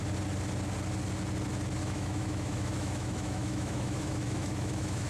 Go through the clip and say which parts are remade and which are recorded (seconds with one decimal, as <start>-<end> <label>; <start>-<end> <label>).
0.0-1.8 recorded; 1.8-5.1 remade